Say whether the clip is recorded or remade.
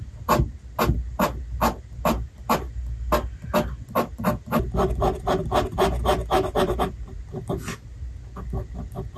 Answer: recorded